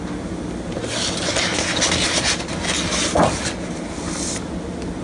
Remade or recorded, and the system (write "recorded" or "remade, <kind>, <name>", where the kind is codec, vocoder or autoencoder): recorded